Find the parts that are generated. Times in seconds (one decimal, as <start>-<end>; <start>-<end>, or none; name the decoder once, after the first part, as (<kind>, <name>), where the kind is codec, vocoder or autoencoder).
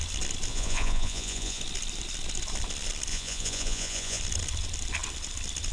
0.5-1.6 (vocoder, Vocos); 3.1-4.2